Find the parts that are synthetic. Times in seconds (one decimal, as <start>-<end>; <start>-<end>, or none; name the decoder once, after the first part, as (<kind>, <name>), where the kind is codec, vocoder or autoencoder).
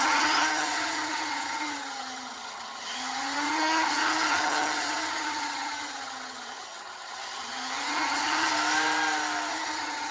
0.0-8.5 (vocoder, HiFi-GAN); 9.5-10.1